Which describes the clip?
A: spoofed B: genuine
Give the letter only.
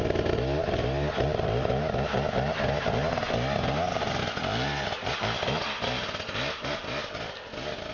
B